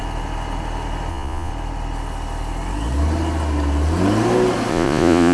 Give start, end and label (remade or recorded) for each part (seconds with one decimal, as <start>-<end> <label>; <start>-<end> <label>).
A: 0.0-1.1 recorded; 1.1-1.5 remade; 1.5-4.7 recorded; 4.7-5.3 remade